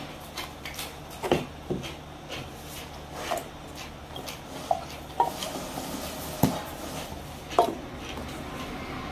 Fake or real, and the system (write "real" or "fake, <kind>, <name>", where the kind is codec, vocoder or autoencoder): real